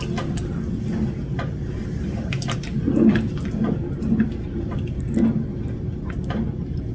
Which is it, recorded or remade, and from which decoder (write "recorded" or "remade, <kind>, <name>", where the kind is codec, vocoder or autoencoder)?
recorded